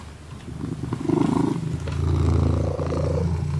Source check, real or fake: real